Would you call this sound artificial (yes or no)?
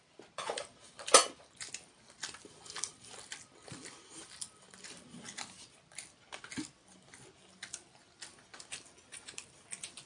no